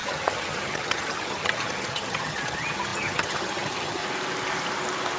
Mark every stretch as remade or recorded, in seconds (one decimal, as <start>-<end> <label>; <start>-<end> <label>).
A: 0.0-4.0 remade; 4.0-5.2 recorded